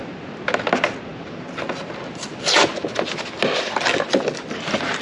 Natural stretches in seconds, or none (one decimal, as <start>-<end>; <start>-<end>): 0.0-5.0

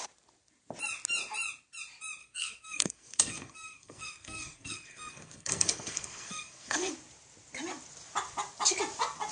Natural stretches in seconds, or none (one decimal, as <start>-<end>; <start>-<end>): 0.0-2.2; 6.9-9.3

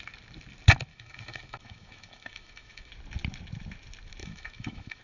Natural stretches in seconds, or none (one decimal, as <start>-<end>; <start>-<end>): 0.0-0.9; 2.9-4.2

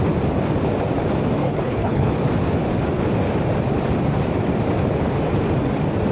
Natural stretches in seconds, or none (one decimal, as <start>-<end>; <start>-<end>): 0.0-1.4; 2.1-6.1

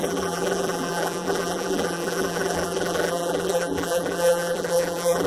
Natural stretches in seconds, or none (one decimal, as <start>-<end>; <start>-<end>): none

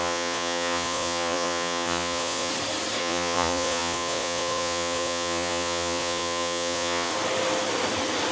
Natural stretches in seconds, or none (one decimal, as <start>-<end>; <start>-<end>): 2.5-3.0; 7.1-8.3

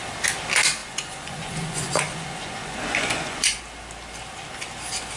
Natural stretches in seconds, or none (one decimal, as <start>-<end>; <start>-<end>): 0.0-0.8; 3.6-5.2